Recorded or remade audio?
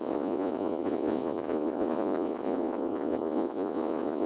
remade